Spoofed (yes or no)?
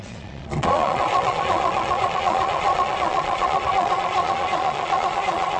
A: yes